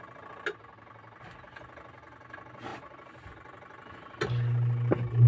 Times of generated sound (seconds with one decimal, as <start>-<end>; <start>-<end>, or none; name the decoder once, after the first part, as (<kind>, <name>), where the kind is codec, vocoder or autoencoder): none